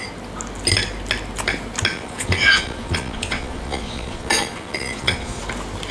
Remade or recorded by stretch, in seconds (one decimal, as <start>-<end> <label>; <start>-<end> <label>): 0.0-1.9 recorded; 1.9-5.4 remade; 5.4-5.9 recorded